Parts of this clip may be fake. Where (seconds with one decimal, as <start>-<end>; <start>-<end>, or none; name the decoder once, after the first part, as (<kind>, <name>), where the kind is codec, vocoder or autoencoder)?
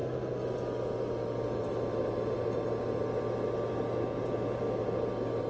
none